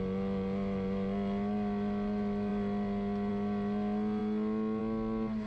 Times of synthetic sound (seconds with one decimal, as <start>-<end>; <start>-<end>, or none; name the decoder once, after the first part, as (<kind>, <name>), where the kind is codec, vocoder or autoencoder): none